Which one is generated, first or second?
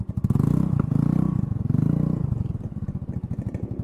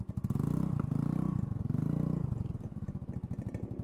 first